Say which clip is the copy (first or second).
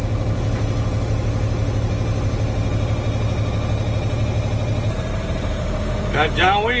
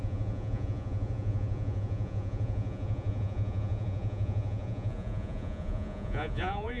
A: second